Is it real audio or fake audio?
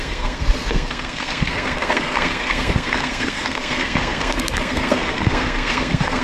fake